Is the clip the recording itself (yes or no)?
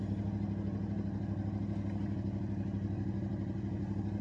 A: yes